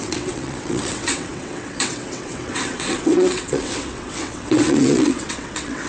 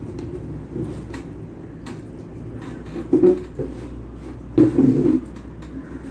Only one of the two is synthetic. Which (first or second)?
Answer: first